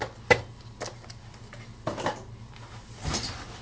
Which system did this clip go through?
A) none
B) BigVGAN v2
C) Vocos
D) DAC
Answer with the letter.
A